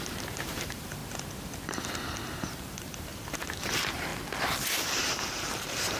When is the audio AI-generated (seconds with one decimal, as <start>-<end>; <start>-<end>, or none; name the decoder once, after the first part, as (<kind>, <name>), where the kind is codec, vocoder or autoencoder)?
0.0-1.0 (vocoder, BigVGAN v2); 2.5-3.1; 3.6-4.1; 4.7-6.0